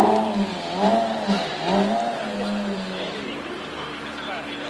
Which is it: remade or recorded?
recorded